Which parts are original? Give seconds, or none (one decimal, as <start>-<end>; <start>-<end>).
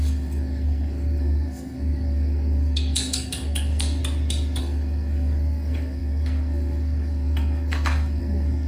4.0-4.6